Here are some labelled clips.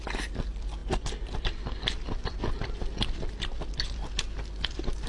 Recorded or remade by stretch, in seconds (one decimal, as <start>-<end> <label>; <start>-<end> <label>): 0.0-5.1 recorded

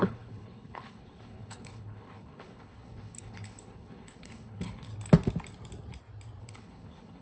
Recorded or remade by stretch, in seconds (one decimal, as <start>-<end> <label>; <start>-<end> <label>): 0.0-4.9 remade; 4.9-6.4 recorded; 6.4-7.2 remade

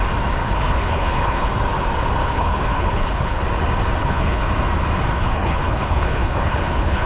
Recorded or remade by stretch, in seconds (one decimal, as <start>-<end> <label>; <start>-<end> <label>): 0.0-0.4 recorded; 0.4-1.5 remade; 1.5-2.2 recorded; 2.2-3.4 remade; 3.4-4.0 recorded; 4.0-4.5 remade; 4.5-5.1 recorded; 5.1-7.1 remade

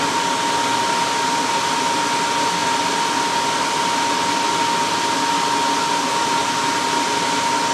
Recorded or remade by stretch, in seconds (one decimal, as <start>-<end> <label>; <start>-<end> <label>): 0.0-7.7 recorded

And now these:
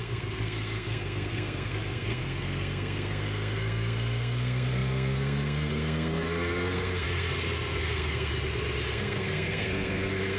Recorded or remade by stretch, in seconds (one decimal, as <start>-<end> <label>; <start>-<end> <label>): 0.0-8.3 remade; 8.3-8.9 recorded; 8.9-10.4 remade